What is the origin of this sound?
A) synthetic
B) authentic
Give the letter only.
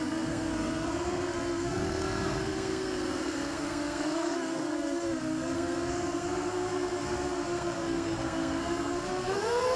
A